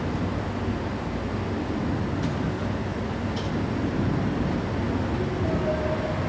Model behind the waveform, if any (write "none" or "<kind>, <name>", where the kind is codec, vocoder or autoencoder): none